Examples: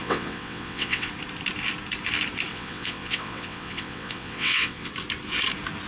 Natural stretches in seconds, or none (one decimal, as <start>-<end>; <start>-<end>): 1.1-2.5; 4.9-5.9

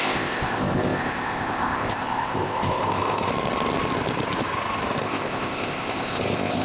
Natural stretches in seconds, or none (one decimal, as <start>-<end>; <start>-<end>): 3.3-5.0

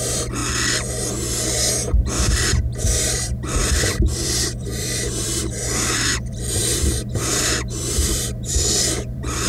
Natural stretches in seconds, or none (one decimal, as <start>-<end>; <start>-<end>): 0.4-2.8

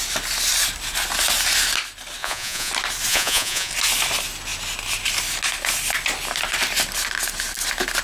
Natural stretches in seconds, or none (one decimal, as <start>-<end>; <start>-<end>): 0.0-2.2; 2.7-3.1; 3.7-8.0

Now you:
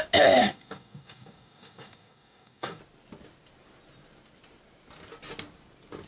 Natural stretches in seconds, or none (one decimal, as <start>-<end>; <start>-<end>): 0.0-0.4; 2.8-6.1

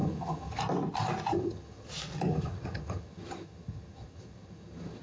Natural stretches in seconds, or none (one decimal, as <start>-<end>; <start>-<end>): 0.6-1.3; 1.9-2.3

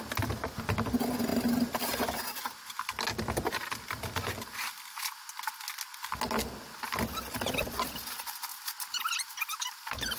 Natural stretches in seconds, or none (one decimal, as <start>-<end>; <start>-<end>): 0.0-1.3; 2.0-8.5